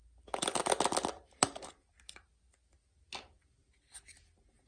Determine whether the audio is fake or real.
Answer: real